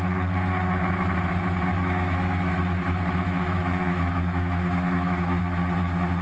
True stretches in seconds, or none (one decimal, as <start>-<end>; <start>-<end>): 0.0-1.7; 5.4-6.2